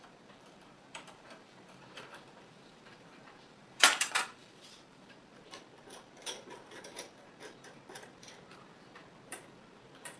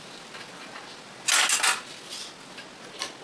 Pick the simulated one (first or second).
first